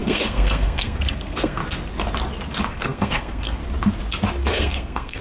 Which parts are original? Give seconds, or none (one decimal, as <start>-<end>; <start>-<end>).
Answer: 1.6-2.7; 3.6-4.5